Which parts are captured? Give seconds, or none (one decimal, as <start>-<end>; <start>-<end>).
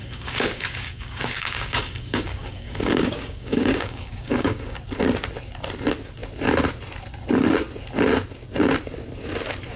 4.8-9.8